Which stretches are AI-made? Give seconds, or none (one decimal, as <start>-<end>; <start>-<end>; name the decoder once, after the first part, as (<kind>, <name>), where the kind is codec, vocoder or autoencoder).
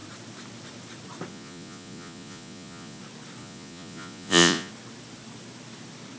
1.3-3.0 (vocoder, Vocos); 3.4-4.7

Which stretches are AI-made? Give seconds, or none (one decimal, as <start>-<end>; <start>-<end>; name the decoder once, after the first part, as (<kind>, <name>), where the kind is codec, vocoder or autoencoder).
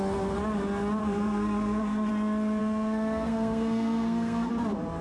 1.0-2.1 (codec, SNAC); 2.6-4.5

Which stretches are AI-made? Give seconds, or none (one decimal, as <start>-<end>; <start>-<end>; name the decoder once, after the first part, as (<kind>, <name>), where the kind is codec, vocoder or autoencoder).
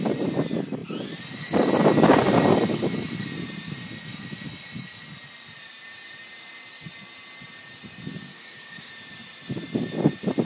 8.3-8.9 (codec, DAC)